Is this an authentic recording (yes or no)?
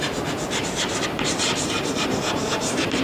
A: no